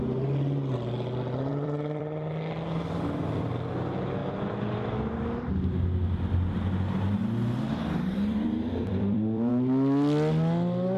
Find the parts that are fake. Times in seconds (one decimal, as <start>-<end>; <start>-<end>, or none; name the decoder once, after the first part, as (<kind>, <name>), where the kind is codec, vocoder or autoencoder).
1.5-2.3 (vocoder, BigVGAN v2); 7.2-9.5